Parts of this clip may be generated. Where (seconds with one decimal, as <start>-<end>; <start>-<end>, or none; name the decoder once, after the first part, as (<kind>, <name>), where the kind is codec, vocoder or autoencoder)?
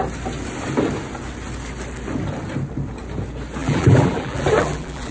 3.6-5.1 (vocoder, BigVGAN v2)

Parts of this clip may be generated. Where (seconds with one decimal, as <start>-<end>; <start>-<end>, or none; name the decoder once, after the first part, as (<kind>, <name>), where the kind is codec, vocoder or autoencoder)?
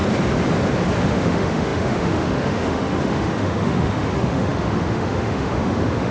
1.0-6.1 (autoencoder, DAC-VAE)